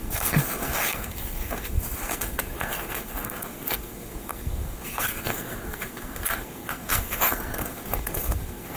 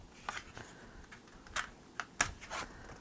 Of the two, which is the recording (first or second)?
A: second